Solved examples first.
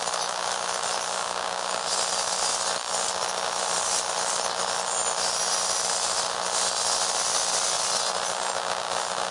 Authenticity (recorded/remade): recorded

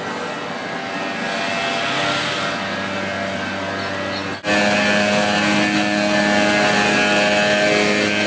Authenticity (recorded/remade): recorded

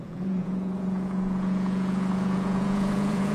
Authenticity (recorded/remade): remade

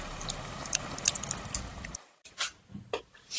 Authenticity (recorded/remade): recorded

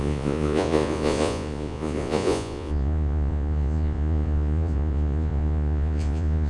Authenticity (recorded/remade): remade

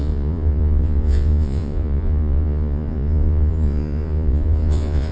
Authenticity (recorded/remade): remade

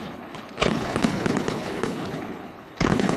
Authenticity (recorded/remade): remade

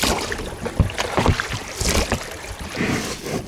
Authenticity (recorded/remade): remade